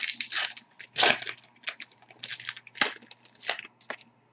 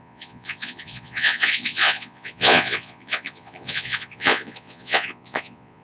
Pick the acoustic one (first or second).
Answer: first